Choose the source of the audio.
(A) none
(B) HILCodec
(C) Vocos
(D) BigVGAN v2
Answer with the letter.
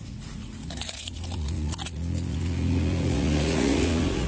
C